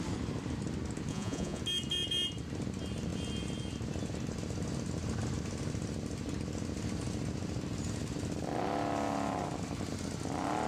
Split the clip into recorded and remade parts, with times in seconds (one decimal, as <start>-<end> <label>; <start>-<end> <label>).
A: 0.0-1.1 recorded; 1.1-1.6 remade; 1.6-10.7 recorded